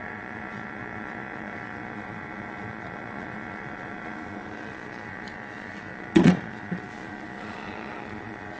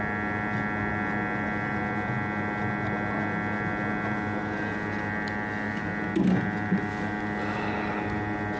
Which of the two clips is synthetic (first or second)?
first